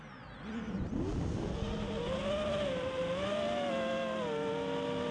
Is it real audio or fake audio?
real